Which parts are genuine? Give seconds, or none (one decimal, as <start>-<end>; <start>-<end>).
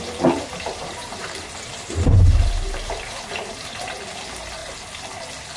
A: 0.0-0.5; 3.9-5.6